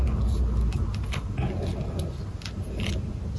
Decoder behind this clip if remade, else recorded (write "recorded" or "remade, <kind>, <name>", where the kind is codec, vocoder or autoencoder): recorded